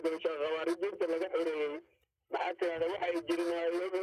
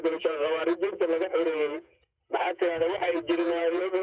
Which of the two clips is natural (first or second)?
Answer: first